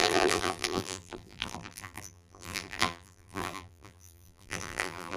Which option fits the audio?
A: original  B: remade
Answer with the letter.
B